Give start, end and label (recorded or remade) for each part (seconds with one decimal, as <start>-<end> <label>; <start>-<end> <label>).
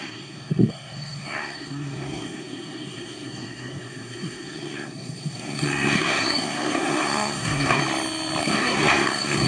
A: 0.0-7.8 remade; 7.8-8.4 recorded; 8.4-9.5 remade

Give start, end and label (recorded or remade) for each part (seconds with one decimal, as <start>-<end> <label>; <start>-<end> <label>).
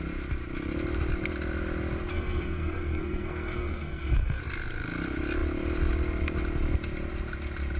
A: 0.0-2.1 recorded; 2.1-4.4 remade; 4.4-7.8 recorded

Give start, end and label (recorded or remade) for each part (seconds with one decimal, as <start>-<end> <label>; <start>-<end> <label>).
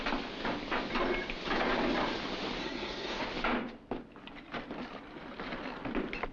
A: 0.0-2.6 recorded; 2.6-3.2 remade; 3.2-6.3 recorded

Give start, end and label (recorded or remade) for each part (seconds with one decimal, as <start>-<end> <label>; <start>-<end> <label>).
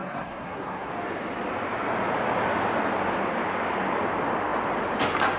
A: 0.0-0.9 remade; 0.9-5.4 recorded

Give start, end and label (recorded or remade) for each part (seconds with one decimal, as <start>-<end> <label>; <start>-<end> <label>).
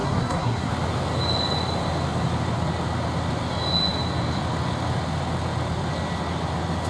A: 0.0-0.7 remade; 0.7-6.9 recorded